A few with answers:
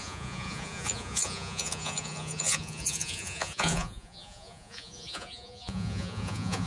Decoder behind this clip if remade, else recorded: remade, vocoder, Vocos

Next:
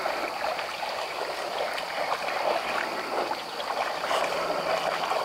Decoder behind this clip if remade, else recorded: recorded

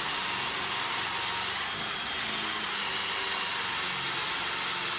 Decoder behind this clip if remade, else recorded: recorded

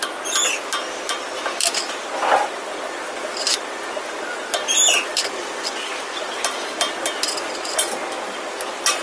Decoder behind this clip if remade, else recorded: recorded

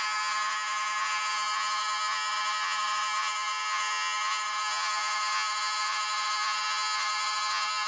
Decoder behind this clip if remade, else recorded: remade, vocoder, Vocos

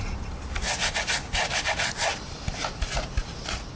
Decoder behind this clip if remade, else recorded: recorded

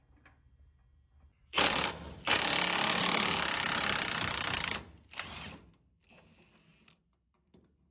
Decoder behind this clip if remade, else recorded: recorded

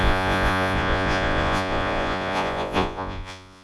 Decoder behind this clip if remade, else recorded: remade, vocoder, Vocos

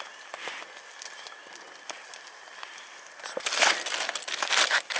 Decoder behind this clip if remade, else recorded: recorded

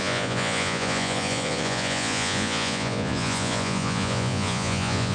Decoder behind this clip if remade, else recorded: remade, vocoder, Vocos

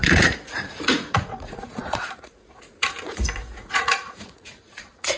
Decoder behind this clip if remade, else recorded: remade, vocoder, Vocos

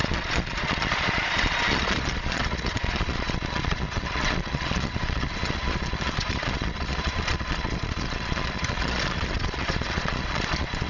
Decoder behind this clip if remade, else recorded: remade, vocoder, Vocos